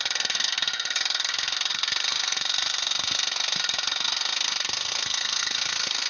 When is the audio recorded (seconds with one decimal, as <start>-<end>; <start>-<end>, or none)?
none